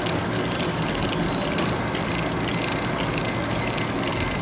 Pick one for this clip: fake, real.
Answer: real